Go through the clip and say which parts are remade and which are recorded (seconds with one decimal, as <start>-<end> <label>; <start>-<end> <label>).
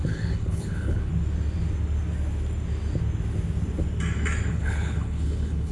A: 0.0-1.1 remade; 1.1-4.5 recorded; 4.5-5.7 remade